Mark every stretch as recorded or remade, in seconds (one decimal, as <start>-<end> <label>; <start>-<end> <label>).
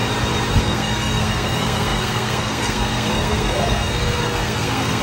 0.0-0.6 recorded; 0.6-5.0 remade